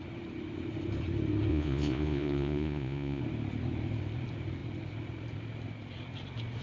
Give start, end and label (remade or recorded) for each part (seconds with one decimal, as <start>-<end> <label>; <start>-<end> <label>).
0.0-1.5 recorded; 1.5-3.2 remade; 3.2-6.6 recorded